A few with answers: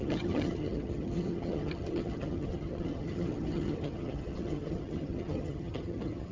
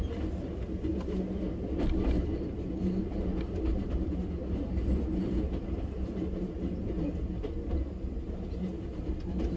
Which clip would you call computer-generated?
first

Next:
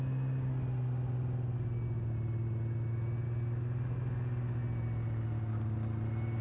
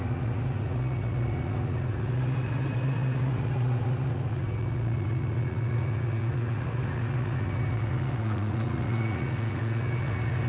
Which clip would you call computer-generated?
second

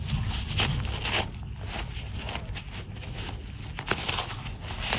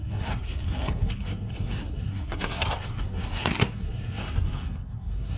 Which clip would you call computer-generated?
second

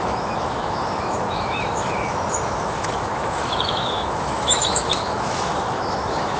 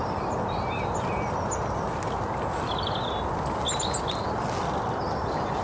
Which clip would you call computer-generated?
first